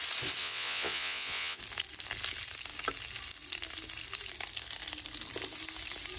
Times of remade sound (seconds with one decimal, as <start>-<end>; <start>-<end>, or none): 0.4-1.6